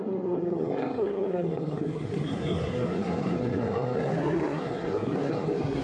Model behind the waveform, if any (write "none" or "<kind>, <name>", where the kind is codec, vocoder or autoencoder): codec, SNAC